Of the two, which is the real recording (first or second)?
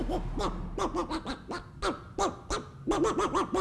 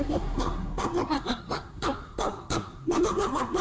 first